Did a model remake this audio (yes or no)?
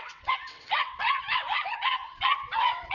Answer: yes